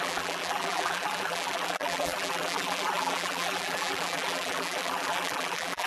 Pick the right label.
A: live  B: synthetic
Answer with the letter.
B